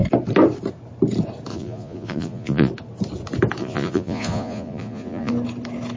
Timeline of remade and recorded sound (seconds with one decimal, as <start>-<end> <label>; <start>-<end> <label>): 0.0-1.5 recorded; 1.5-2.7 remade; 2.7-3.6 recorded; 3.6-5.3 remade; 5.3-6.0 recorded